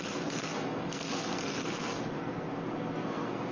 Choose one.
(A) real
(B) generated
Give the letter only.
B